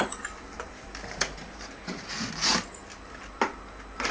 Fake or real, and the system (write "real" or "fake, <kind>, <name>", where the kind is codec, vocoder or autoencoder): real